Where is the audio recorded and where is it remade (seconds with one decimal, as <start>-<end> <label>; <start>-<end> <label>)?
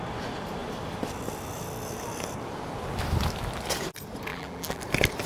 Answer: 0.0-4.3 recorded; 4.3-4.8 remade; 4.8-5.3 recorded